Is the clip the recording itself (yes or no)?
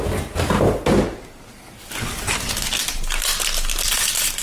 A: yes